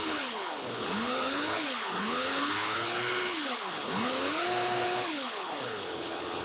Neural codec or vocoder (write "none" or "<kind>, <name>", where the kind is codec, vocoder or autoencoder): codec, HILCodec